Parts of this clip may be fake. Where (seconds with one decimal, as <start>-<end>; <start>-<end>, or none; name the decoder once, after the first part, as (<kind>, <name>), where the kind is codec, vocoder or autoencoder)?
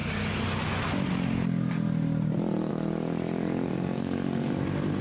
3.7-5.0 (vocoder, BigVGAN v2)